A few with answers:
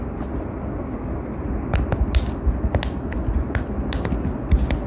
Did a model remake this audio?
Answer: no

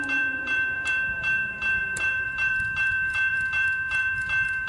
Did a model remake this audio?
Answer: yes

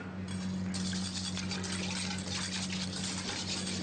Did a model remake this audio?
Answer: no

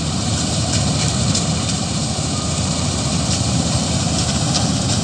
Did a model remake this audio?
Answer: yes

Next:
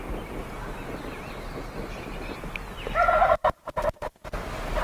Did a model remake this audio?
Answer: no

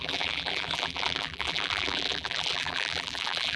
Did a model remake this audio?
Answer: yes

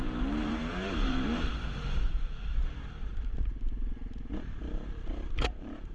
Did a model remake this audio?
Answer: yes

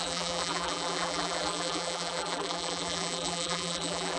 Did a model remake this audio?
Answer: yes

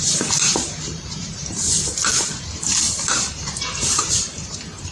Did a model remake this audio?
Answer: yes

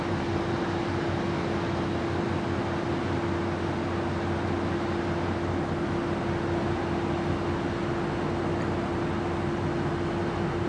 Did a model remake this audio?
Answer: no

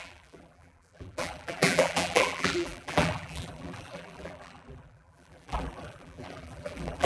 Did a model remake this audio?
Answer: yes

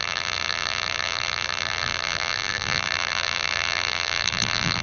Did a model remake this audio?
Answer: yes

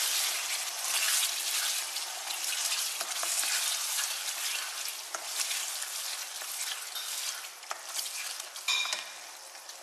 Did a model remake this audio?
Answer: no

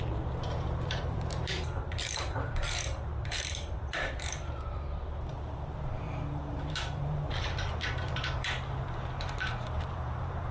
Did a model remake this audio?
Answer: yes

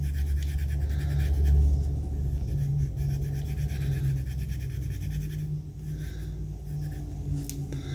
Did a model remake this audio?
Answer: no